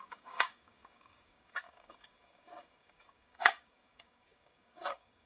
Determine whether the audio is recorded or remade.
remade